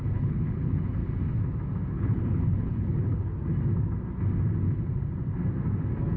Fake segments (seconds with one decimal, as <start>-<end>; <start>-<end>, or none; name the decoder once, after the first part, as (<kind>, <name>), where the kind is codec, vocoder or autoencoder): 0.0-1.0 (codec, HILCodec); 1.9-3.3